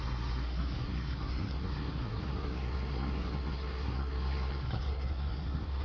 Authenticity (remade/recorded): remade